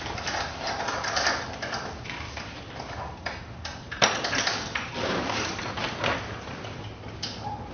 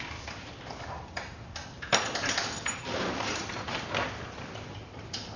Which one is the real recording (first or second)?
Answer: first